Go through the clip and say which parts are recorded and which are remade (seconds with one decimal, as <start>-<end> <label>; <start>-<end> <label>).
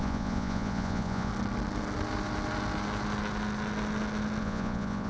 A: 0.0-1.3 remade; 1.3-4.4 recorded; 4.4-5.1 remade